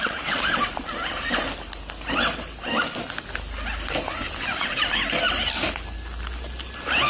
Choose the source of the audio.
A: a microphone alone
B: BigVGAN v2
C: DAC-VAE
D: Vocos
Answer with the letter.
A